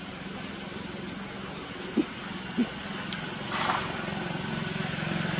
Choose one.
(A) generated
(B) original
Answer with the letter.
B